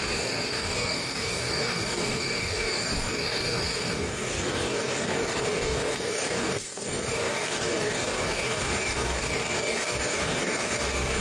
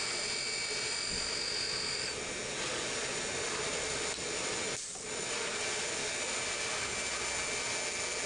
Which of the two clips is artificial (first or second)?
first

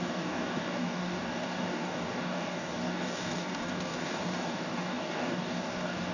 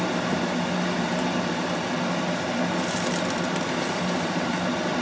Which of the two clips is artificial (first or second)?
first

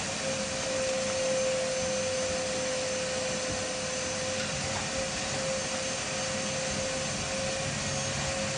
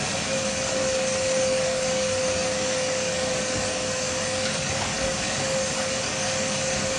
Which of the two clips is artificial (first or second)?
second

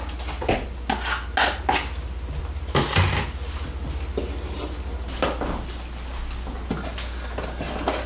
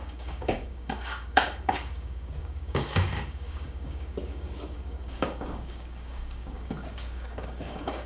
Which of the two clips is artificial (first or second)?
second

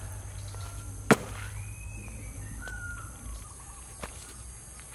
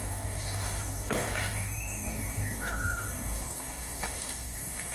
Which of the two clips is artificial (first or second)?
second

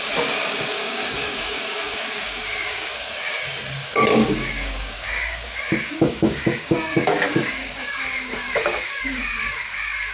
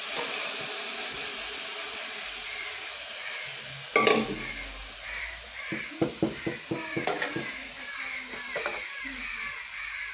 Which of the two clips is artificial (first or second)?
first